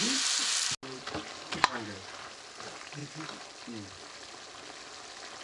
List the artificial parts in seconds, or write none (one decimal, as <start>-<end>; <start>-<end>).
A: none